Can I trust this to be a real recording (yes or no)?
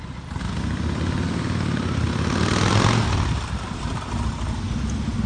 yes